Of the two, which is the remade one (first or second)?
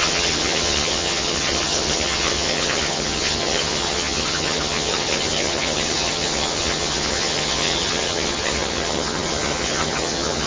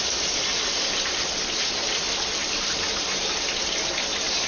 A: first